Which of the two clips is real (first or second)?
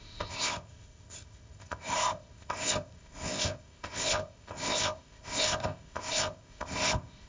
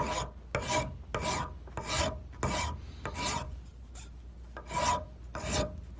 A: second